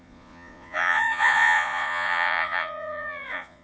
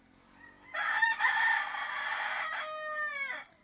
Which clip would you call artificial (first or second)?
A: first